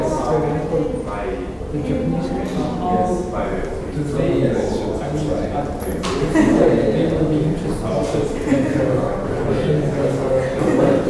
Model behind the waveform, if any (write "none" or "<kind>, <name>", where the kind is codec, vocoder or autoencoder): none